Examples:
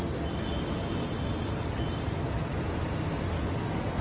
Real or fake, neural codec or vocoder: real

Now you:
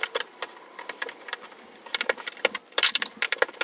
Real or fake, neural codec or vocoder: fake, vocoder, BigVGAN v2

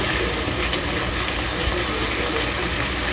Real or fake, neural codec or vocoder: real